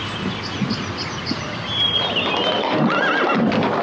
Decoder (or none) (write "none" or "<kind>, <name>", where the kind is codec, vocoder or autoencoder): none